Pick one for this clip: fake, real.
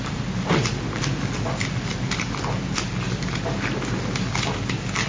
real